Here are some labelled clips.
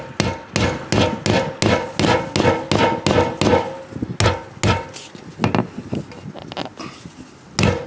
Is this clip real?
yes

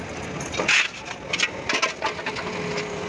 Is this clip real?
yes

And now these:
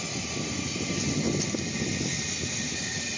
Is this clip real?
yes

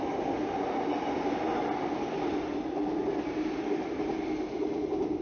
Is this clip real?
yes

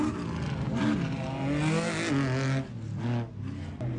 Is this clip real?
yes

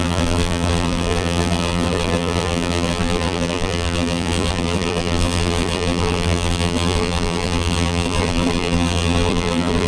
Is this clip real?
no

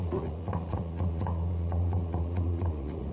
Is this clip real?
no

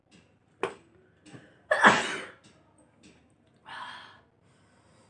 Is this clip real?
yes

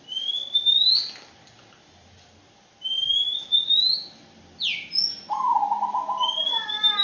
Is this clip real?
yes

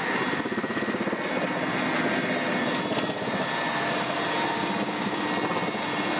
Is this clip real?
yes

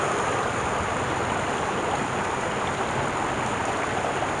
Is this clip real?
yes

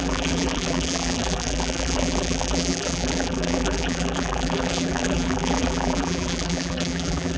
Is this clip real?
no